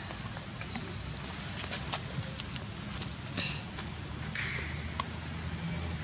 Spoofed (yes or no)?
no